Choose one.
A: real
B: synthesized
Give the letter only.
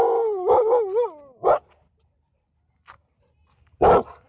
A